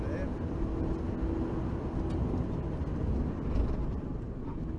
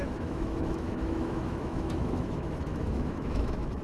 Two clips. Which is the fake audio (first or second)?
second